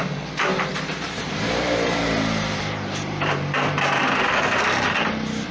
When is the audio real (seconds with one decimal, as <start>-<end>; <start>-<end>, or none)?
0.0-0.7; 4.0-5.5